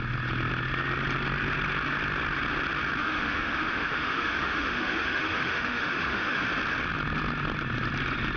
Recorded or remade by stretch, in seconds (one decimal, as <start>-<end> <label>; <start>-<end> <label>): 0.0-3.0 recorded; 3.0-6.4 remade; 6.4-8.4 recorded

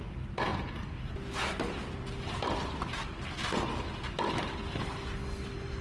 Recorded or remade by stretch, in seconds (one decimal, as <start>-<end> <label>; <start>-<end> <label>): 0.0-5.8 recorded

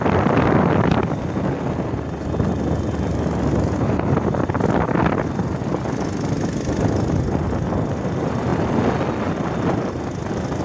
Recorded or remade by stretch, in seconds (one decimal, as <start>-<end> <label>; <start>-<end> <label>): 0.0-10.6 recorded

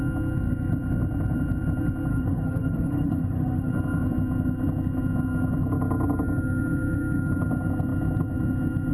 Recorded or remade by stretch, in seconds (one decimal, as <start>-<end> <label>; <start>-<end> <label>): 0.0-2.1 recorded; 2.1-3.7 remade; 3.7-8.9 recorded

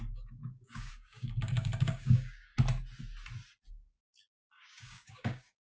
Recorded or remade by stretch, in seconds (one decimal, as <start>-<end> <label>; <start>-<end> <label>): 0.0-2.5 remade; 2.5-3.7 recorded; 3.7-5.7 remade

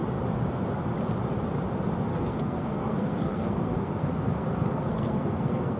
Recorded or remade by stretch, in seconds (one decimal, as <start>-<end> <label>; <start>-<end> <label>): 0.0-2.1 recorded; 2.1-5.8 remade